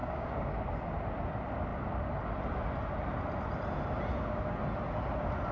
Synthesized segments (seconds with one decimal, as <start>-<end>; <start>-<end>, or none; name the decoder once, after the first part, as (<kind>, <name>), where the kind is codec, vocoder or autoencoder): 0.0-0.5 (codec, DAC)